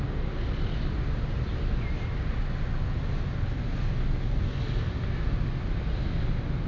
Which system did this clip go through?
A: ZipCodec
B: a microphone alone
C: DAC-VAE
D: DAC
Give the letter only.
B